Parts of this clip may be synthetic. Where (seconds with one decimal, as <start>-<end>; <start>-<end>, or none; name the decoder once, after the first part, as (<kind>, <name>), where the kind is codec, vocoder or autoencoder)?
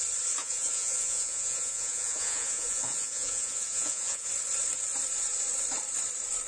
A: 0.4-4.3 (vocoder, Vocos)